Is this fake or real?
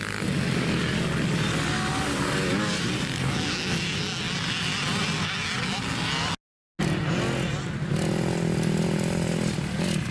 real